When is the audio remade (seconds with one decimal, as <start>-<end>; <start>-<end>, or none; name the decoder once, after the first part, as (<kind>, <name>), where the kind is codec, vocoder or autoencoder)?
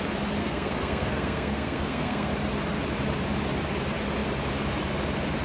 0.4-2.3 (codec, SNAC)